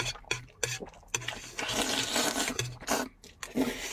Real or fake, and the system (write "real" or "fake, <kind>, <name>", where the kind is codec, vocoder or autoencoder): real